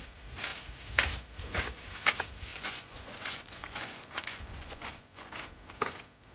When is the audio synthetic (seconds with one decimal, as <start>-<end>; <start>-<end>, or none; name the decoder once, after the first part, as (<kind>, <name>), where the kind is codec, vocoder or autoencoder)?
2.5-5.3 (vocoder, Vocos)